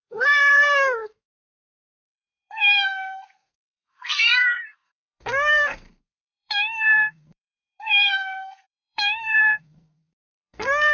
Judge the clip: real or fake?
fake